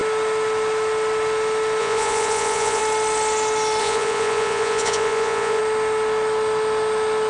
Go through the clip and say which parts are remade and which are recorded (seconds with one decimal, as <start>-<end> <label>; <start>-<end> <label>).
0.0-1.8 recorded; 1.8-2.8 remade; 2.8-3.8 recorded; 3.8-5.6 remade; 5.6-7.3 recorded